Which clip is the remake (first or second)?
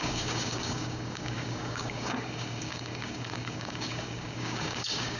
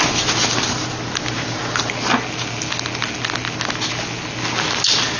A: first